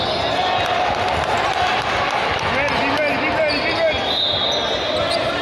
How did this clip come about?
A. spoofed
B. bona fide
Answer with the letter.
B